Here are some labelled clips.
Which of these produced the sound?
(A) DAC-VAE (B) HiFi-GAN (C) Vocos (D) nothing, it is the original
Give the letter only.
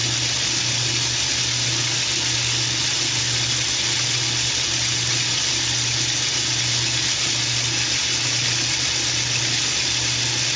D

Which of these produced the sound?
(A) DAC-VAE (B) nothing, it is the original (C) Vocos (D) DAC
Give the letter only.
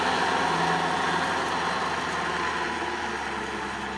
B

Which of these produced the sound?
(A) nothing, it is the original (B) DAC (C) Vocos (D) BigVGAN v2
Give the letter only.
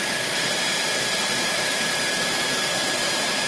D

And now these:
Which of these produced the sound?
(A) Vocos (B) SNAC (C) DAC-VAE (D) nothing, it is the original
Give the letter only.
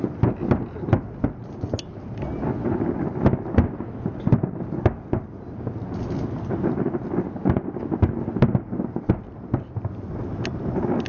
D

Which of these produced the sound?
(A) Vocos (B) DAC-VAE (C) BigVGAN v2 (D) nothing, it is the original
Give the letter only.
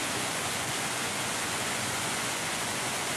A